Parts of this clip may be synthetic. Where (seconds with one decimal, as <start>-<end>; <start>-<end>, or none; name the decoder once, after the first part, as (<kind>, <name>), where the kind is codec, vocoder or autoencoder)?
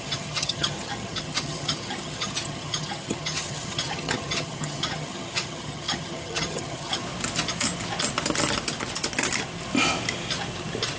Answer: 0.0-7.0 (vocoder, HiFi-GAN)